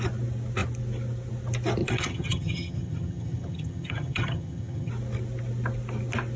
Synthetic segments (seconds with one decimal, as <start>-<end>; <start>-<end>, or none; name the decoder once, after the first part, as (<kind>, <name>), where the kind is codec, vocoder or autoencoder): 1.8-4.9 (vocoder, HiFi-GAN)